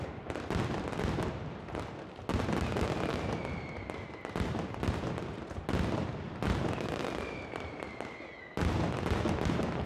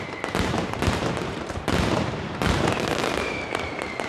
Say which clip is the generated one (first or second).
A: second